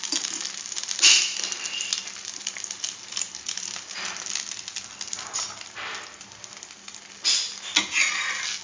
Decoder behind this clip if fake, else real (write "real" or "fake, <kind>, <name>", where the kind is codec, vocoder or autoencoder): real